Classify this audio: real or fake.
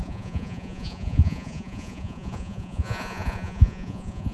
fake